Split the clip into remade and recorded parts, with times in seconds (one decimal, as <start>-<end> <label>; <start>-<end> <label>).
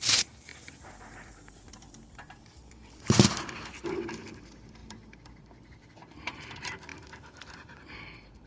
0.0-0.5 remade; 0.5-1.5 recorded; 1.5-8.5 remade